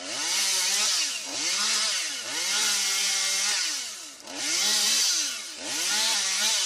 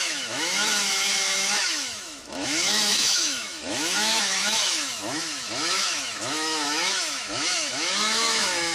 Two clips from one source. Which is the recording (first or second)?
first